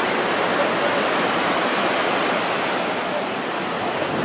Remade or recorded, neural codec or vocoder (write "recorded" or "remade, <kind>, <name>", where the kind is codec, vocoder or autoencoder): recorded